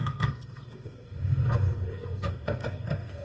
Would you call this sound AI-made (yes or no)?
yes